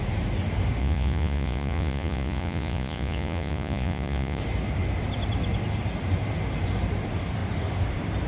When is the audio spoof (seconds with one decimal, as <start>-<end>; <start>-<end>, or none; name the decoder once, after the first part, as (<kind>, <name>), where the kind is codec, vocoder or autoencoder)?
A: 0.8-4.4 (vocoder, Vocos)